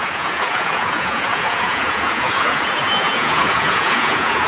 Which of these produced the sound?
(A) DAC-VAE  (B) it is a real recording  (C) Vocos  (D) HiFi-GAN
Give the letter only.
C